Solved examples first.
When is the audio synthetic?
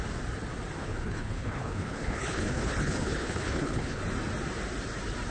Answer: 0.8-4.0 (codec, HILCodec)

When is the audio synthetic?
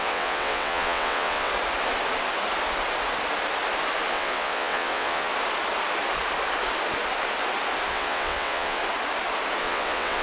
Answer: 0.0-1.5 (vocoder, WaveNeXt); 4.1-5.3; 7.9-8.8; 9.6-10.2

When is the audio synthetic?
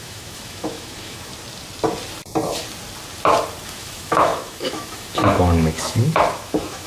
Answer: 0.0-1.3 (autoencoder, DAC-VAE); 3.7-6.9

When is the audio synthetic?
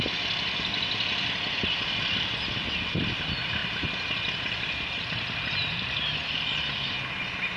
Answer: none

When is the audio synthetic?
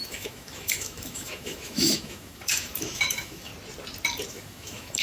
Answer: 0.0-3.5 (autoencoder, DAC-VAE); 4.3-5.0